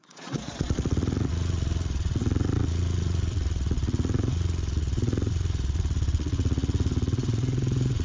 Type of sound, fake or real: fake